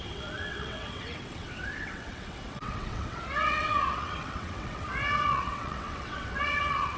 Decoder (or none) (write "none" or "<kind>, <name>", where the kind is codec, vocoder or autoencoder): vocoder, WaveNeXt